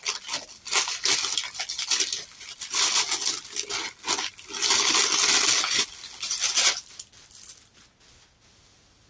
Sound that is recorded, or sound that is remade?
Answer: recorded